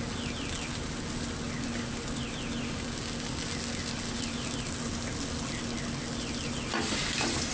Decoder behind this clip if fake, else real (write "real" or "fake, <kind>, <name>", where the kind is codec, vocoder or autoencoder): real